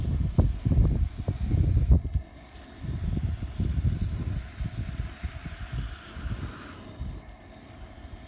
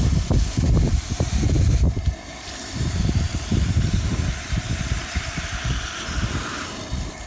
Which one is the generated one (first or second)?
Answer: second